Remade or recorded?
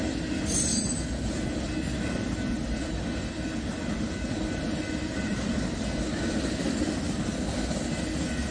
recorded